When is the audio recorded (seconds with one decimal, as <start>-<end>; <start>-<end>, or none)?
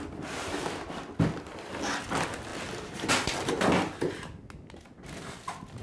0.0-5.8